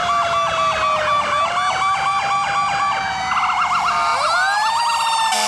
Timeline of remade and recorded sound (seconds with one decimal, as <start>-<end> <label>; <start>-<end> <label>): 0.0-5.5 recorded